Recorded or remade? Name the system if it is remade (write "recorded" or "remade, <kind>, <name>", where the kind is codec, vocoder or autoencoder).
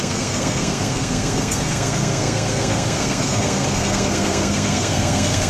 remade, codec, SNAC